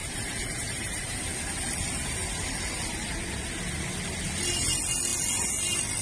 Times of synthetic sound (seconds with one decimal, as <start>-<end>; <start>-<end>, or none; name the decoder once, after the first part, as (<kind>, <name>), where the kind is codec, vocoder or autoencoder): none